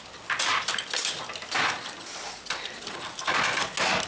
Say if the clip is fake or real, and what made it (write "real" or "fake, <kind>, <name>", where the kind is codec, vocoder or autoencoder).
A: real